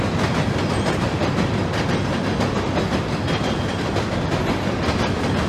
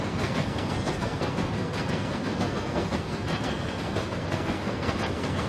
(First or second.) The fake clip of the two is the second